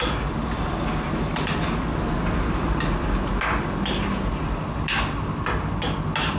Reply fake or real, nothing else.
real